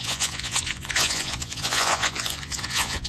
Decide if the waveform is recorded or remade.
remade